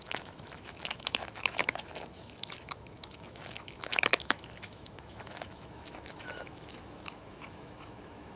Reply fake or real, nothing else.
fake